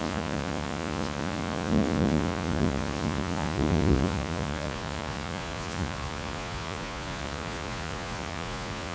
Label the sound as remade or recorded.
remade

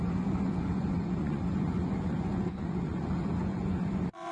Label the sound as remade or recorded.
remade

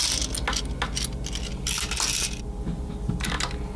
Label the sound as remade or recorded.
recorded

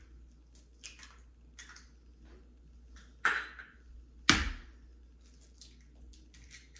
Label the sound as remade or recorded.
recorded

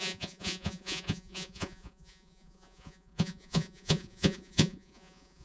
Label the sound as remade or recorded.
remade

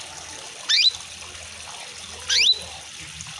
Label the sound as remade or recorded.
recorded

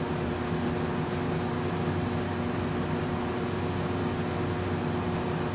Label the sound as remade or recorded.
recorded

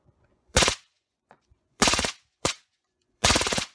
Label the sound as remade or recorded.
remade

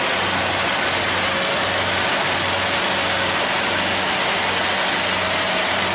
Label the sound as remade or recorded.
recorded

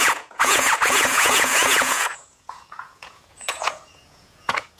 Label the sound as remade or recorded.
remade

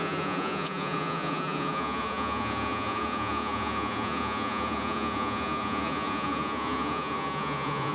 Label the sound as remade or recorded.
remade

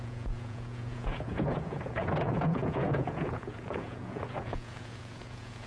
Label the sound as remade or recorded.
remade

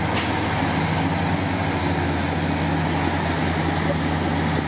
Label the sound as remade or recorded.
recorded